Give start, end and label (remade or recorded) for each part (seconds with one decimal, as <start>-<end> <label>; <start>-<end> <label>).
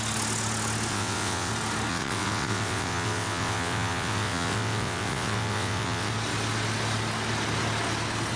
0.0-0.9 recorded; 0.9-1.5 remade; 1.5-1.9 recorded; 1.9-6.1 remade; 6.1-8.4 recorded